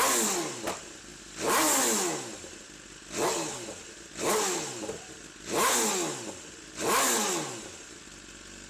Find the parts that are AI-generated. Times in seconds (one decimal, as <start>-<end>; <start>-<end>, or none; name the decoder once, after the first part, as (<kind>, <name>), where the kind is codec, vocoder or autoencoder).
none